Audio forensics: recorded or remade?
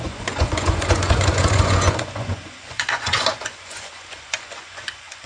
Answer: remade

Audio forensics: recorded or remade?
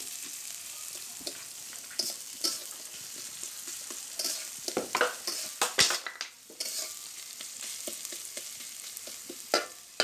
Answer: recorded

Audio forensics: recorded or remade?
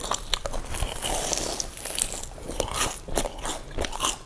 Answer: recorded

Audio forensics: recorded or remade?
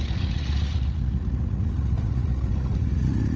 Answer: remade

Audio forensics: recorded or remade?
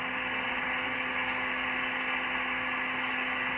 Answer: recorded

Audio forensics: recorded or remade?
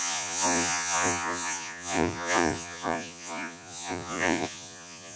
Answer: remade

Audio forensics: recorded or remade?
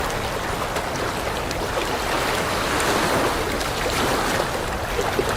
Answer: recorded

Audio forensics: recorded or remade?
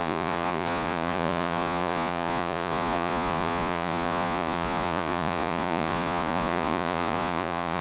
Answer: remade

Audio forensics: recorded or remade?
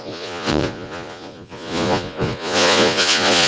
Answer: remade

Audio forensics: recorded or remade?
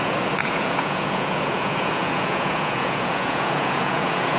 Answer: remade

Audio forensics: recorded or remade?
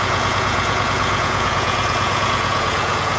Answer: remade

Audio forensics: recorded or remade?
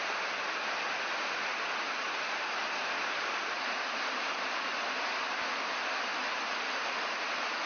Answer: recorded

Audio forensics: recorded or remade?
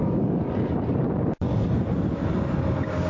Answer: recorded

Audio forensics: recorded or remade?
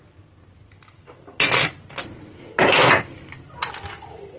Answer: recorded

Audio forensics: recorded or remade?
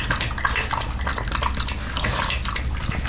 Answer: recorded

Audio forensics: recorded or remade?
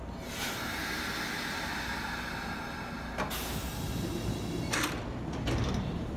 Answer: recorded